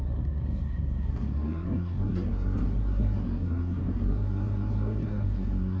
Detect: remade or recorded remade